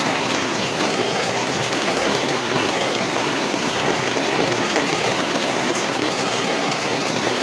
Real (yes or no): no